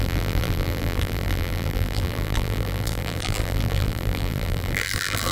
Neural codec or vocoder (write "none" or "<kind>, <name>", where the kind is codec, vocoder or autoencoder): vocoder, BigVGAN v2